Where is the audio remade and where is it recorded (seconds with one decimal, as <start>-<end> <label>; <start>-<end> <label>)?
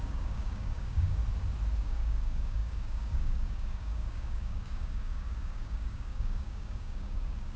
0.0-1.2 remade; 1.2-1.8 recorded; 1.8-7.6 remade